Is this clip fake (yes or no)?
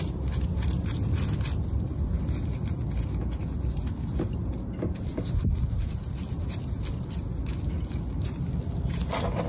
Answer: no